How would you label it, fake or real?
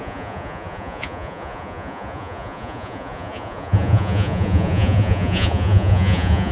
fake